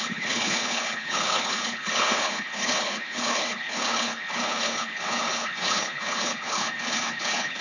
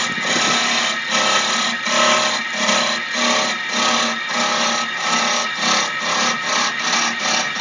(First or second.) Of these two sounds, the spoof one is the first